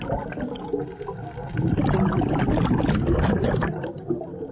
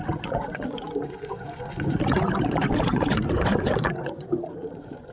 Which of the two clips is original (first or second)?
first